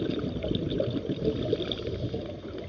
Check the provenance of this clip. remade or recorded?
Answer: recorded